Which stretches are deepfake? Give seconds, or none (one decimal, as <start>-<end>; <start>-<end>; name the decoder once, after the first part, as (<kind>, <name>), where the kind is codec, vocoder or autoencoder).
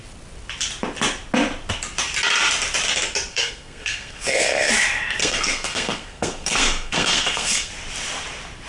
3.3-4.7 (codec, SNAC); 5.2-7.7